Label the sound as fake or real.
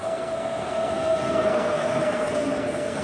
fake